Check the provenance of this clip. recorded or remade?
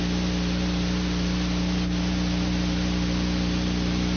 recorded